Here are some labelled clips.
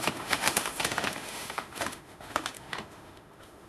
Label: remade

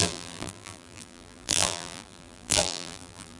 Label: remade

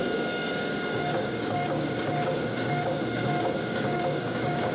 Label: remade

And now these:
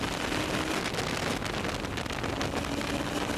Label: recorded